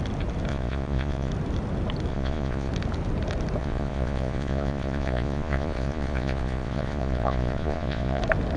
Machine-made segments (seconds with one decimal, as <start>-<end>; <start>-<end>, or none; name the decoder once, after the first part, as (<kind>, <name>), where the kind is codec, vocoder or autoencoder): 0.5-1.3 (vocoder, Vocos); 2.1-2.7; 3.6-8.2

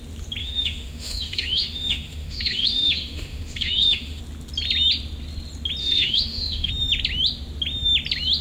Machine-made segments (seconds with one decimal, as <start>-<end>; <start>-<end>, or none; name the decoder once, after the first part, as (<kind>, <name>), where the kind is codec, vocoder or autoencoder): 0.4-4.2 (autoencoder, DAC-VAE); 5.8-6.7

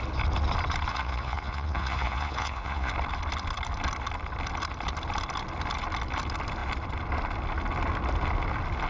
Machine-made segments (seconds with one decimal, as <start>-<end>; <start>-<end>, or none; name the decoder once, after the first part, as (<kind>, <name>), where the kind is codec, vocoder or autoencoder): 0.9-2.9 (vocoder, Vocos)

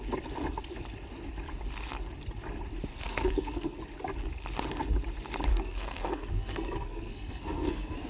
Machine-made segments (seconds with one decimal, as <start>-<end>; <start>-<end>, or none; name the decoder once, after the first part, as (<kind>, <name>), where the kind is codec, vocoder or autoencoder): 2.9-3.8 (codec, SNAC); 5.5-8.1

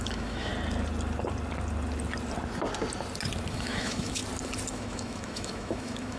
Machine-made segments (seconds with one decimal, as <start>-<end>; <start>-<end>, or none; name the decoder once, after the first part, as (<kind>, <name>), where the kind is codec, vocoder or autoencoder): 0.0-0.5 (autoencoder, DAC-VAE); 3.5-4.2; 4.7-6.2

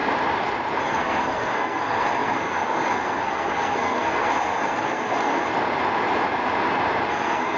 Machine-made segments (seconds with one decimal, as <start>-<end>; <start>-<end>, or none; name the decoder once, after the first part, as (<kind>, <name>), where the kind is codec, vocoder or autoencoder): 0.8-5.5 (codec, SNAC); 7.1-7.6

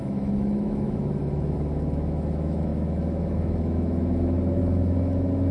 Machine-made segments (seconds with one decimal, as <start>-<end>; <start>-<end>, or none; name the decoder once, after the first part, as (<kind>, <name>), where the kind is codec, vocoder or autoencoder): 0.0-5.5 (autoencoder, DAC-VAE)